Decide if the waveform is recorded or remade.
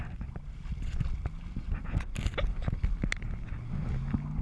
recorded